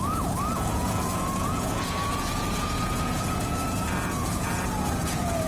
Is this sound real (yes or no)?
no